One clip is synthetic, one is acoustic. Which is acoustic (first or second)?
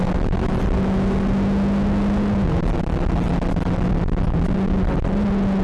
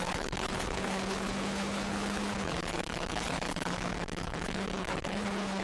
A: first